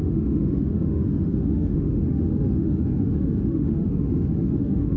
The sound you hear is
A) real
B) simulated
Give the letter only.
B